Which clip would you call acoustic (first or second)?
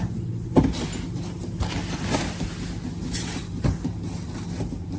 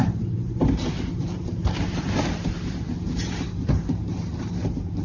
first